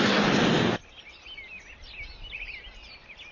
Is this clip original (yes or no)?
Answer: yes